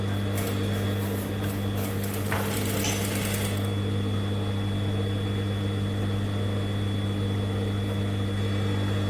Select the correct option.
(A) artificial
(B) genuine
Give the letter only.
B